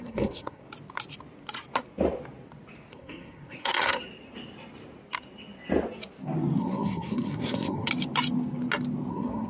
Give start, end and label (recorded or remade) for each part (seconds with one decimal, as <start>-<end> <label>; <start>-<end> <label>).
0.0-0.6 remade; 0.6-2.9 recorded; 2.9-4.0 remade; 4.0-6.6 recorded; 6.6-7.9 remade; 7.9-9.1 recorded; 9.1-9.5 remade